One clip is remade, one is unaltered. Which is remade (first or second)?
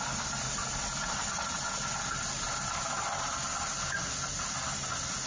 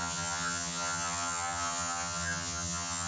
second